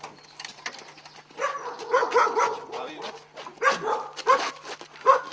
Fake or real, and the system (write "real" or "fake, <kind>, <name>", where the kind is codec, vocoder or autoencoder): real